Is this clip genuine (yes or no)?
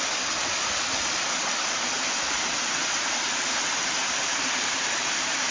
yes